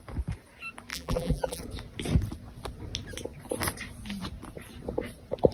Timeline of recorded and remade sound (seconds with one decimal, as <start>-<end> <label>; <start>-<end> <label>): 0.0-0.9 recorded; 0.9-1.6 remade; 1.6-5.5 recorded